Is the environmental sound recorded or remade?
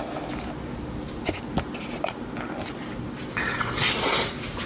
recorded